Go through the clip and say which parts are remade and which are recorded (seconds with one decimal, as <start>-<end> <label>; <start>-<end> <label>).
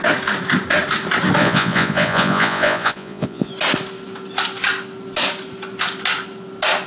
0.0-1.4 recorded; 1.4-3.5 remade; 3.5-6.9 recorded